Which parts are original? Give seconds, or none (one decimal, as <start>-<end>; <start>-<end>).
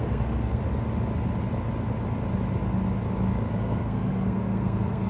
0.6-3.5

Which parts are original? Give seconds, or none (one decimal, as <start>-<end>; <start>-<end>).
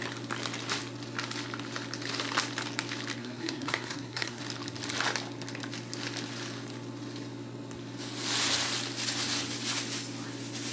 0.0-3.2; 4.4-10.7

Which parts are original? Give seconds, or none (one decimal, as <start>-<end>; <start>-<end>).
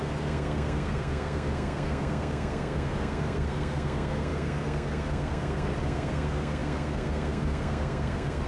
none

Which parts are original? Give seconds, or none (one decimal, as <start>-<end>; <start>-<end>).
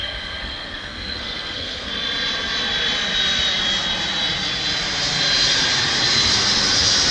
1.9-7.1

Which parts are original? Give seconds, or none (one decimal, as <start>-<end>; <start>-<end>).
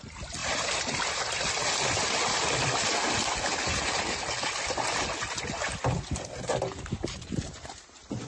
0.0-8.3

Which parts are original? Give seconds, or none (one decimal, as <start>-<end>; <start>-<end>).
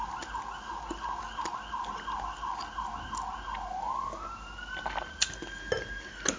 0.0-6.4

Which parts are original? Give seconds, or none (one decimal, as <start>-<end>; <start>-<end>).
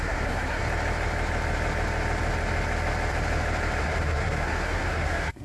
0.6-3.8